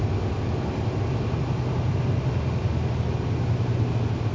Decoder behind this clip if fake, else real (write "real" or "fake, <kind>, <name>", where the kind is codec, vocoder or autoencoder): real